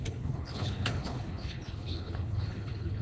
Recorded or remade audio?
remade